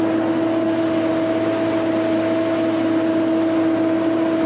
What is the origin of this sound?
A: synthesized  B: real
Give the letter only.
B